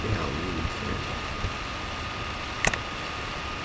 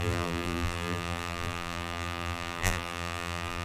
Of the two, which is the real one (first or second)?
first